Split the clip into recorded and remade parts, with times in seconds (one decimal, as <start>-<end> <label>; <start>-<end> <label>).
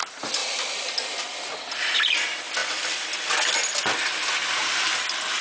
0.0-0.4 recorded; 0.4-1.8 remade; 1.8-2.6 recorded; 2.6-4.1 remade; 4.1-5.4 recorded